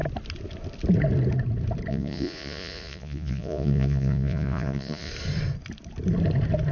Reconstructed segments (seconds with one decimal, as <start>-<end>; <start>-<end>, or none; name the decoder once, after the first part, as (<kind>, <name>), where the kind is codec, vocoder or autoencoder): 1.9-5.1 (vocoder, Vocos)